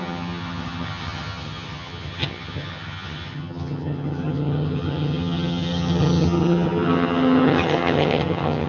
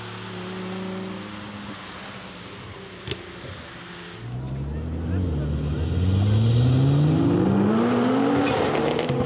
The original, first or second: second